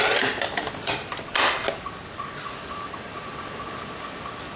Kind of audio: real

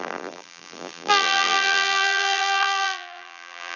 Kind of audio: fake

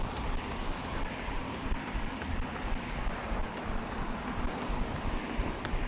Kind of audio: real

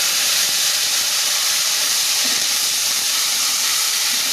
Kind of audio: fake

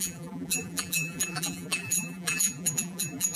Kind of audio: fake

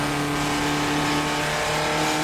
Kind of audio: real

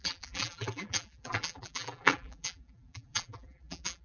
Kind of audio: fake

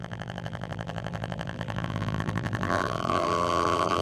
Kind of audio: fake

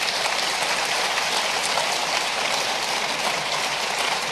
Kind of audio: fake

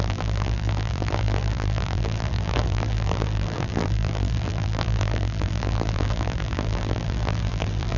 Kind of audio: fake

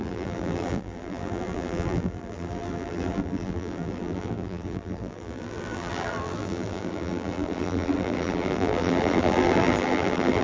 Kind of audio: fake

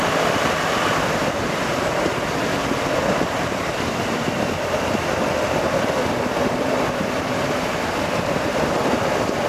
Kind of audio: fake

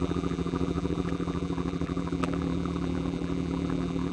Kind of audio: fake